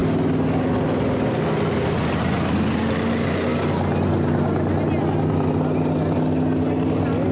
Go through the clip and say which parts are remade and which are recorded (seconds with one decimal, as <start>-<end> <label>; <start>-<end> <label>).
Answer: 0.0-7.3 recorded